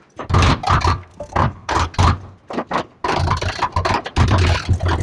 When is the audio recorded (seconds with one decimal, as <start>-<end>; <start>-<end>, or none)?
0.0-0.9; 1.7-5.0